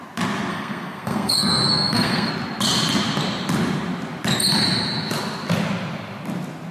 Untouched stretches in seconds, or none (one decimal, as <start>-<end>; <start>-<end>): 0.0-0.5; 2.3-6.7